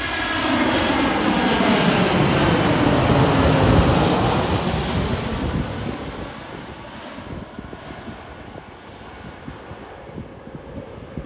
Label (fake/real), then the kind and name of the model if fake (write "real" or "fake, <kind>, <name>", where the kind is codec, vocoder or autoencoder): real